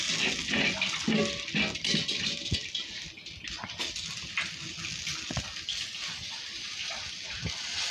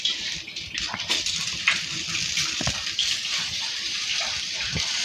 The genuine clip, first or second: first